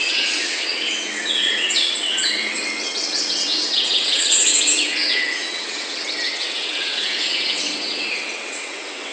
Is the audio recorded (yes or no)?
no